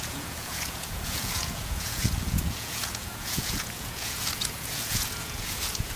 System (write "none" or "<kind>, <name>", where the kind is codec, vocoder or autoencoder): vocoder, Vocos